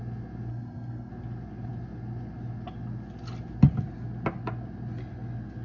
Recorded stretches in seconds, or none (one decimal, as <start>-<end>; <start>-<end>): 0.0-0.5; 1.1-5.6